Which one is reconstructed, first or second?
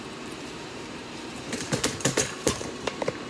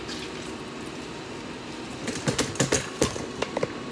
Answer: first